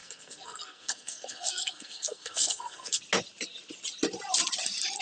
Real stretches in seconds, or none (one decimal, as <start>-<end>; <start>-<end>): 3.0-5.0